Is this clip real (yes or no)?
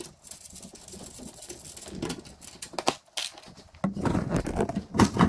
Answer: yes